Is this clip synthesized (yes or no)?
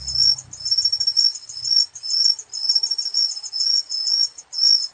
no